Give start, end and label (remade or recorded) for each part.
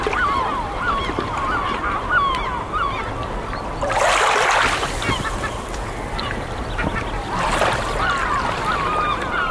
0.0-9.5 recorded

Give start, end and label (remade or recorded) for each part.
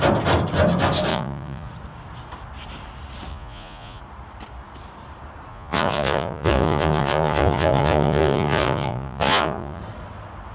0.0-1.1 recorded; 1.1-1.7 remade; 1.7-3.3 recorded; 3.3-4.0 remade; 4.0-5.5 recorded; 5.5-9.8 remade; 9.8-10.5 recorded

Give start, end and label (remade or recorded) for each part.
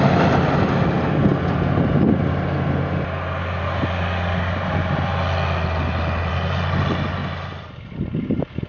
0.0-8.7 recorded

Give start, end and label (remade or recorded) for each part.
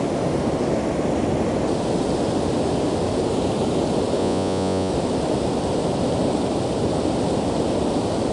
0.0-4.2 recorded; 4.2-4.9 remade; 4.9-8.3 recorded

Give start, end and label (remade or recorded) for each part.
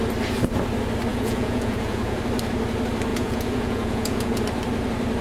0.0-1.1 recorded; 1.1-2.2 remade; 2.2-3.1 recorded; 3.1-4.4 remade; 4.4-5.2 recorded